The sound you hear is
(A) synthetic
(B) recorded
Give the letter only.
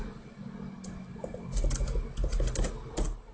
B